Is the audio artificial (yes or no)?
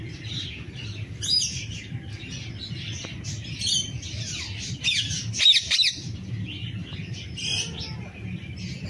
no